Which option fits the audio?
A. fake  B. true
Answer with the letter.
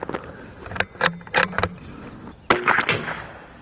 B